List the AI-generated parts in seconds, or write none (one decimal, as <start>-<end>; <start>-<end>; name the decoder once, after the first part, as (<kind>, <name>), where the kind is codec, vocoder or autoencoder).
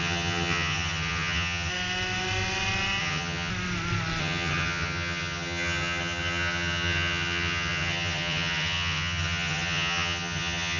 0.0-1.7 (vocoder, HiFi-GAN); 3.0-3.5; 4.2-10.8